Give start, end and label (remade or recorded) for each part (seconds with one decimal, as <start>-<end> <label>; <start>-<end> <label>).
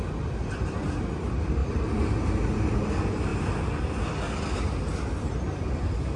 0.0-6.2 recorded